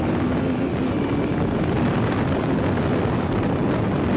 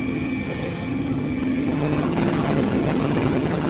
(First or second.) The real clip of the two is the first